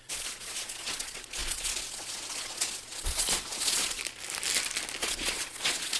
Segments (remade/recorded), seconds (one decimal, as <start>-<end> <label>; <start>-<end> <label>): 0.0-4.0 remade; 4.0-5.0 recorded; 5.0-6.0 remade